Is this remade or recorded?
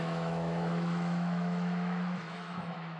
remade